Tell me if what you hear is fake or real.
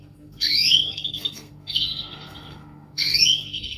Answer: fake